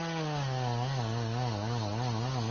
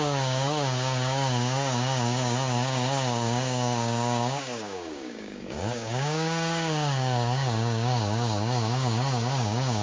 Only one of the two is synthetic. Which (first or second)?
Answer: second